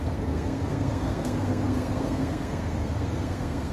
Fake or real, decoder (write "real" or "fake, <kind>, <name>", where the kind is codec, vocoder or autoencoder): fake, codec, SNAC